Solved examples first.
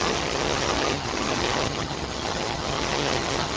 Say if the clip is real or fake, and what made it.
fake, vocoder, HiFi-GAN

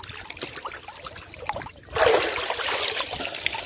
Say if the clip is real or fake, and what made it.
real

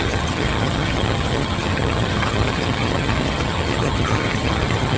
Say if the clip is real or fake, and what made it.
fake, vocoder, HiFi-GAN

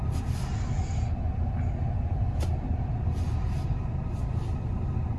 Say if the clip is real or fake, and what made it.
real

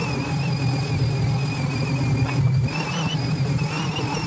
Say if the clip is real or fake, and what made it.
real